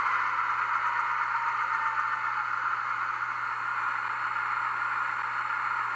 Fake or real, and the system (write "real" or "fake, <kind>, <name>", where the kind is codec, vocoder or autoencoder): real